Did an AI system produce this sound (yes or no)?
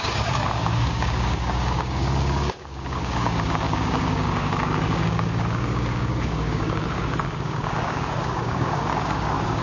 yes